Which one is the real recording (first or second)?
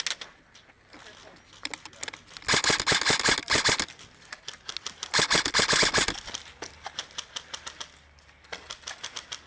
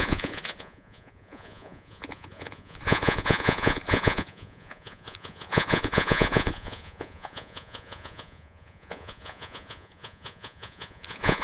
first